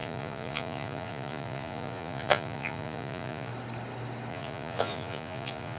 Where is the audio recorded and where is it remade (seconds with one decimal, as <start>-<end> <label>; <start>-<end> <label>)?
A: 0.0-3.5 remade; 3.5-4.3 recorded; 4.3-5.8 remade